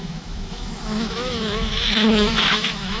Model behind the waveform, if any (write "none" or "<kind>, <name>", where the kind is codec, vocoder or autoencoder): autoencoder, DAC-VAE